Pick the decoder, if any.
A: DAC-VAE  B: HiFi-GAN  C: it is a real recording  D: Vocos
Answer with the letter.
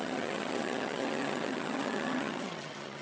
B